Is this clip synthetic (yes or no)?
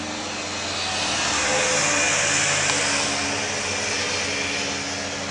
no